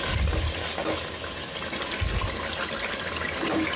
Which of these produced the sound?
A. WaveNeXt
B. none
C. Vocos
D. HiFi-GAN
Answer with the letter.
B